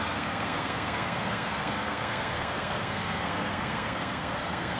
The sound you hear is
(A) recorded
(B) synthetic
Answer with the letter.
B